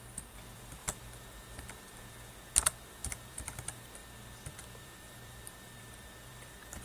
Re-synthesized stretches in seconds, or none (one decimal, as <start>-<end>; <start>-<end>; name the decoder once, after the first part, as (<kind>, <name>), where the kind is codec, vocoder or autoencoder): 0.0-0.8 (vocoder, BigVGAN v2); 1.3-4.0; 4.8-6.8